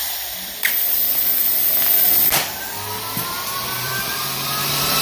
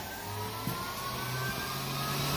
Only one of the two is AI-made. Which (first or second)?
first